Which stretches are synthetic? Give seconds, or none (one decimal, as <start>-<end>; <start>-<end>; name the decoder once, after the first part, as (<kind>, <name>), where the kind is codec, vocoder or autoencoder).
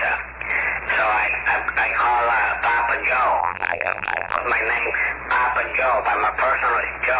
3.4-4.4 (vocoder, BigVGAN v2)